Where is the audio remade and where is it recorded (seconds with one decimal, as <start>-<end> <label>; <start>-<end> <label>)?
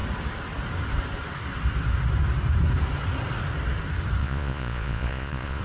0.0-4.2 recorded; 4.2-5.6 remade